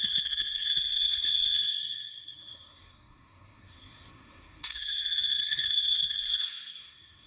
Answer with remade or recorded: remade